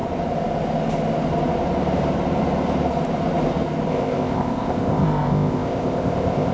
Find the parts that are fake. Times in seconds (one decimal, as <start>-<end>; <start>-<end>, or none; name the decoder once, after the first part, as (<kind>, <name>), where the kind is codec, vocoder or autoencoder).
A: 3.9-6.5 (codec, ZipCodec)